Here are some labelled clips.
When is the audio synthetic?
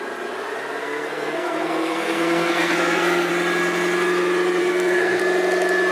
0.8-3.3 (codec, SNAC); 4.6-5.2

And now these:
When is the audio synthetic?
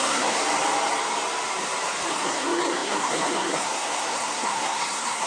0.0-0.4 (codec, SNAC); 2.1-5.3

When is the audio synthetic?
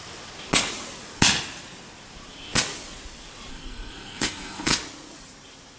3.5-4.7 (codec, SNAC)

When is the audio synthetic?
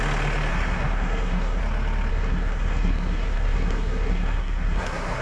0.5-1.6 (codec, SNAC); 2.1-5.2